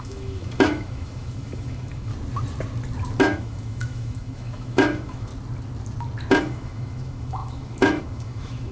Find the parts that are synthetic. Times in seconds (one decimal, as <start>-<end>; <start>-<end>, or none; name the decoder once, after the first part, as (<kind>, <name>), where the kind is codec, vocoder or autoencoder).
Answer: 0.0-2.1 (autoencoder, DAC-VAE); 3.2-5.3; 6.4-8.7